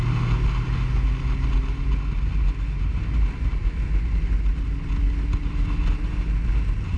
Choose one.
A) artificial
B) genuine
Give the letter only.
B